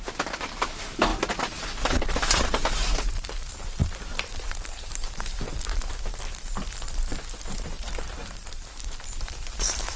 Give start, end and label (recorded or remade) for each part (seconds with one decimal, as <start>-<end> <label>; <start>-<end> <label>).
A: 0.0-1.1 remade; 1.1-3.1 recorded; 3.1-3.8 remade; 3.8-4.3 recorded; 4.3-7.1 remade; 7.1-7.8 recorded; 7.8-10.0 remade